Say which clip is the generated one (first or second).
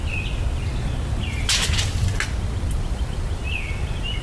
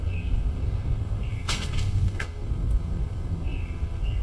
second